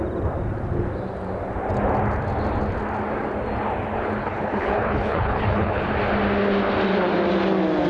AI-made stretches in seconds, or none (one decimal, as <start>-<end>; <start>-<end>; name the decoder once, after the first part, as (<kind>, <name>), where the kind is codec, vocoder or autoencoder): 4.2-5.8 (codec, HILCodec)